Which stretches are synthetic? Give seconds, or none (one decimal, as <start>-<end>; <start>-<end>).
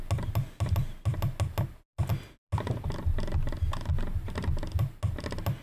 none